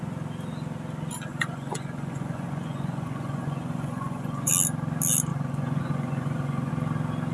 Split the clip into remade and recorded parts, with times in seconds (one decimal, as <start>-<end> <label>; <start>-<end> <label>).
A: 0.0-1.3 recorded; 1.3-4.5 remade; 4.5-5.3 recorded; 5.3-6.7 remade; 6.7-7.3 recorded

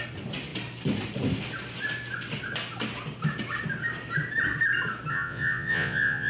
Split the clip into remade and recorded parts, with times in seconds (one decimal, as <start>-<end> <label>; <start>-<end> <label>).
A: 0.0-5.1 recorded; 5.1-6.3 remade

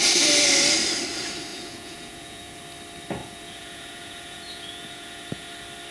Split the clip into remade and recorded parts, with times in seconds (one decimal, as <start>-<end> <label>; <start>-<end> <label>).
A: 0.0-1.5 recorded; 1.5-2.6 remade; 2.6-3.2 recorded; 3.2-5.5 remade; 5.5-5.9 recorded

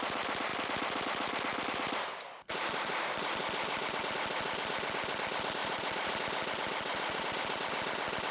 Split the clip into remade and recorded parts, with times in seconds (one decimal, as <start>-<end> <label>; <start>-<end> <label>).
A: 0.0-5.6 recorded; 5.6-6.1 remade; 6.1-6.9 recorded; 6.9-7.4 remade; 7.4-8.3 recorded

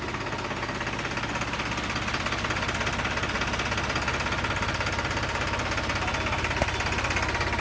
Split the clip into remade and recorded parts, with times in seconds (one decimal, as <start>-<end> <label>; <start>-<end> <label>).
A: 0.0-7.6 recorded

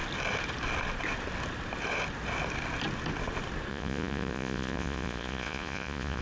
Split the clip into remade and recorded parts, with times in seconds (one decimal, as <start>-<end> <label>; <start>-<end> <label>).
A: 0.0-3.7 recorded; 3.7-6.2 remade

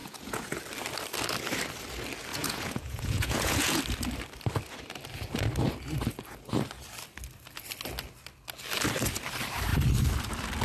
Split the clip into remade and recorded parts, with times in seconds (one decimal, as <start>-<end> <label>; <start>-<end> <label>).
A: 0.0-0.6 remade; 0.6-2.3 recorded; 2.3-3.8 remade; 3.8-10.6 recorded

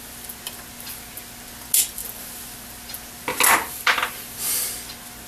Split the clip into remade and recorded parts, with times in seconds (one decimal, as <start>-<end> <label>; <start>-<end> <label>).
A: 0.0-5.3 recorded